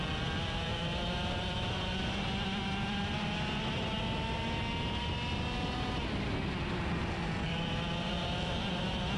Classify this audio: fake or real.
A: real